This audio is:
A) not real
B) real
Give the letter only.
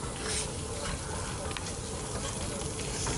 B